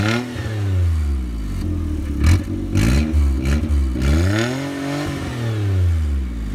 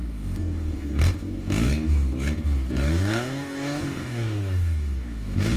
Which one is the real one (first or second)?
first